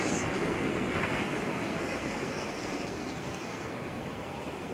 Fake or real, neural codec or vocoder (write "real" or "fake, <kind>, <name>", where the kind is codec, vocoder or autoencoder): fake, codec, SNAC